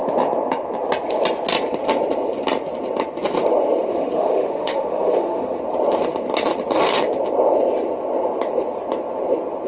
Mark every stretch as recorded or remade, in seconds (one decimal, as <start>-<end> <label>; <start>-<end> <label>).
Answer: 0.0-3.9 recorded; 3.9-5.6 remade; 5.6-9.7 recorded